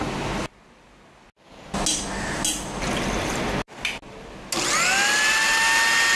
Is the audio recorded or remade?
recorded